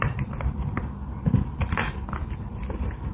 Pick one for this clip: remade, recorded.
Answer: remade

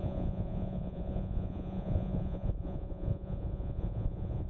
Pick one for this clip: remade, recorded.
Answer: remade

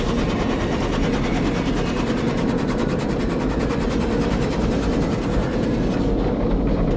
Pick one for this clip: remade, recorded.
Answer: recorded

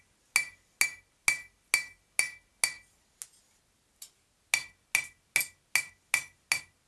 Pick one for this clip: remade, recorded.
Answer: recorded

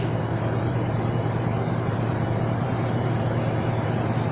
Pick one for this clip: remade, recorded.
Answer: remade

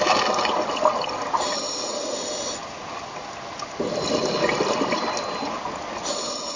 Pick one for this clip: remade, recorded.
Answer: recorded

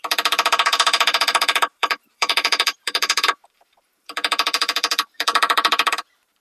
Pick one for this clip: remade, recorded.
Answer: remade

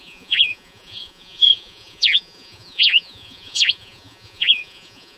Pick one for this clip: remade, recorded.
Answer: remade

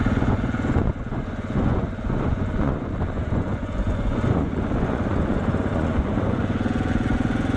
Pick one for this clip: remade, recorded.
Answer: remade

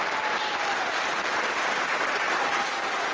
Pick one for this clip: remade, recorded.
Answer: remade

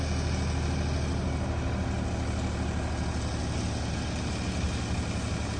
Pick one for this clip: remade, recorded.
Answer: recorded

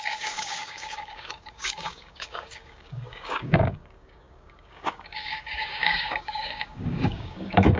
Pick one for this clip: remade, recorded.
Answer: remade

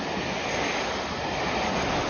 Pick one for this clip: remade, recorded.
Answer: recorded